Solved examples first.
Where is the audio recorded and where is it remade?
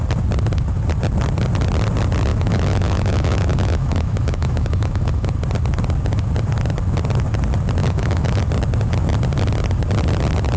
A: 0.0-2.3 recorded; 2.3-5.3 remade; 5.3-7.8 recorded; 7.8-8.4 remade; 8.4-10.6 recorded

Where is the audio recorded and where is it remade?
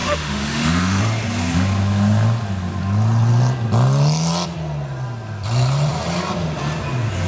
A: 0.0-1.0 remade; 1.0-7.3 recorded